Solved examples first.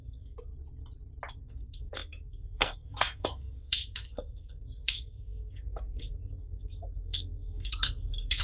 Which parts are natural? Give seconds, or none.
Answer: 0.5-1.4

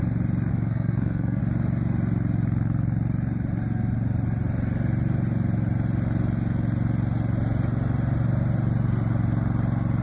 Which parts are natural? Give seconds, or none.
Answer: 0.0-0.5; 1.4-10.0

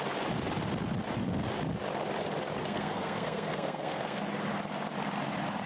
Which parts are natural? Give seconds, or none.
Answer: 0.0-2.6; 4.2-5.7

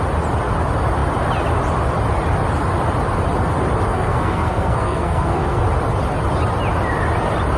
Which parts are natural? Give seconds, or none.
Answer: 0.0-3.9; 5.6-7.6

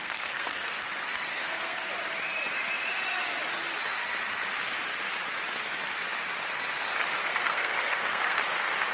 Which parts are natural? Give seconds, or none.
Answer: 0.8-1.3; 1.9-7.2; 8.4-8.9